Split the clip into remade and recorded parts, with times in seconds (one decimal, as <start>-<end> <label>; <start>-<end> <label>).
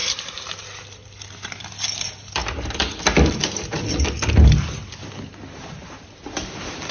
0.0-6.9 recorded